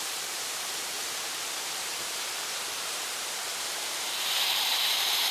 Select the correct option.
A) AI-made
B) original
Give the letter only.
A